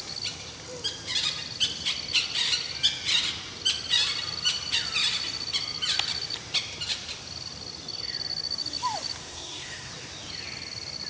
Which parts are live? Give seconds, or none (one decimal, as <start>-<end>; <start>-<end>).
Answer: 0.0-9.2; 9.9-11.1